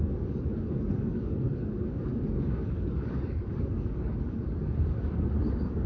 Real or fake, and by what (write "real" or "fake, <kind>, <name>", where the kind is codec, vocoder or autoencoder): fake, codec, DAC